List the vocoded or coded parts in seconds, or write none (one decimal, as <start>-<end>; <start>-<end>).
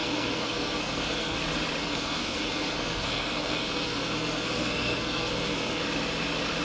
0.0-1.4; 1.8-5.8